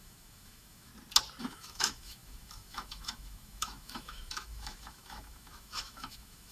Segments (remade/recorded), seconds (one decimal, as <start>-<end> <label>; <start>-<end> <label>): 0.0-0.9 remade; 0.9-1.4 recorded; 1.4-6.5 remade